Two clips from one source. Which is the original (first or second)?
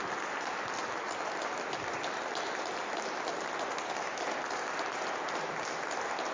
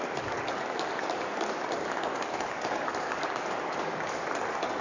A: first